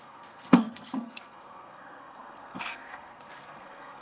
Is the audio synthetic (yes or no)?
yes